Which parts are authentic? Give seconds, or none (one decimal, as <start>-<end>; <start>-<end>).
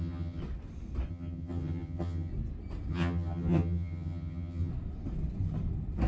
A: 0.4-1.1; 2.3-2.9; 4.7-6.1